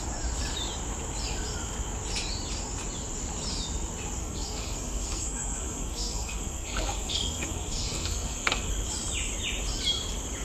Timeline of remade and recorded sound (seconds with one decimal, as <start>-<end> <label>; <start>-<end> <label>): 0.0-4.2 recorded; 4.2-8.7 remade; 8.7-10.4 recorded